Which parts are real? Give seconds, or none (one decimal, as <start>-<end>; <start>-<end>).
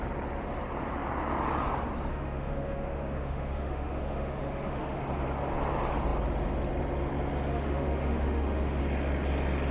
0.0-2.1; 5.0-7.5; 8.8-9.7